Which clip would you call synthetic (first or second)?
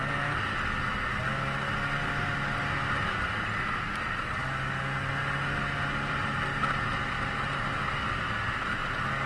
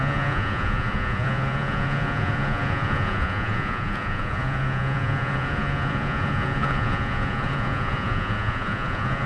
second